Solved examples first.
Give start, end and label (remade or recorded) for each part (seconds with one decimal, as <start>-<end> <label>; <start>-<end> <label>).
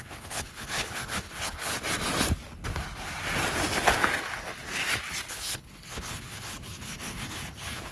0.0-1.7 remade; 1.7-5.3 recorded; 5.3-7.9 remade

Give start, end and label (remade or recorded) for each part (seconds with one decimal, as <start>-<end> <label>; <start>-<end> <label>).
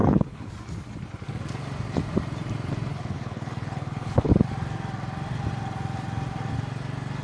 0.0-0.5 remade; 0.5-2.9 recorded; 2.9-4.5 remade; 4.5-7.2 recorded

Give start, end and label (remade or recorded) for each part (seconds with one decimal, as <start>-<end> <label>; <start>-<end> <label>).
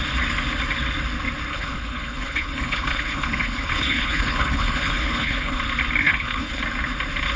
0.0-1.5 recorded; 1.5-5.6 remade; 5.6-6.0 recorded; 6.0-6.6 remade; 6.6-7.4 recorded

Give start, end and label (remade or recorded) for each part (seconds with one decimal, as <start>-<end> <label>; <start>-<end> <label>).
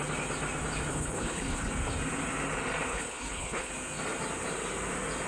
0.0-0.9 recorded; 0.9-1.7 remade; 1.7-2.9 recorded; 2.9-3.7 remade; 3.7-5.3 recorded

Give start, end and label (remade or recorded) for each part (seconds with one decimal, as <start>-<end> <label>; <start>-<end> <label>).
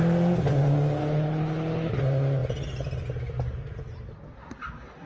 0.0-1.0 recorded; 1.0-2.0 remade; 2.0-5.1 recorded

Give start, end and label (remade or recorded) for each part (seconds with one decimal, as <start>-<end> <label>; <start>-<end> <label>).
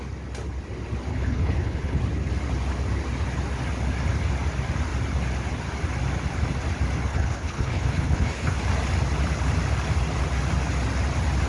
0.0-1.1 recorded; 1.1-2.0 remade; 2.0-7.1 recorded; 7.1-8.6 remade; 8.6-11.5 recorded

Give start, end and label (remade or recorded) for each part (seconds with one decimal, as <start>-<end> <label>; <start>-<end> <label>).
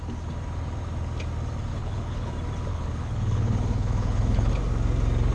0.0-1.7 recorded; 1.7-2.3 remade; 2.3-2.7 recorded; 2.7-4.5 remade; 4.5-5.3 recorded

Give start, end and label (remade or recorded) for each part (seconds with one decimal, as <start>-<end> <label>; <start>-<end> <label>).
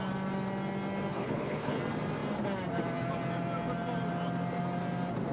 0.0-1.1 recorded; 1.1-1.8 remade; 1.8-5.3 recorded